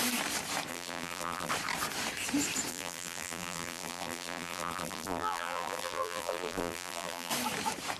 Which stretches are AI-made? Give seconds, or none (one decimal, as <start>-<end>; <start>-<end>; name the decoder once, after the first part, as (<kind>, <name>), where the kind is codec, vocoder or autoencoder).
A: 0.7-1.5 (vocoder, BigVGAN v2); 2.7-7.3